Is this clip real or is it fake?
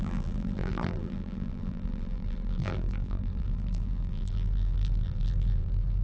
fake